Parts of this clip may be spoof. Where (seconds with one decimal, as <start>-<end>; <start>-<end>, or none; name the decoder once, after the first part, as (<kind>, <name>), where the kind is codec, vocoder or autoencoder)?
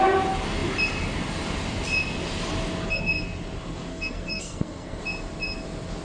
3.9-5.0 (codec, SNAC)